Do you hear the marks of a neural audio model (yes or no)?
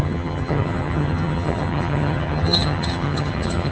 yes